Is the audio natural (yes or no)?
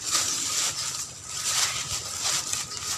yes